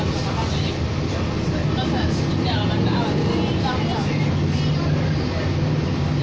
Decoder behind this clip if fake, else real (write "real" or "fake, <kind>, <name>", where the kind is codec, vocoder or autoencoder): real